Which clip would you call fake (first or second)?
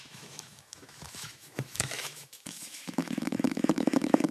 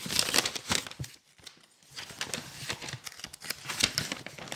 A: first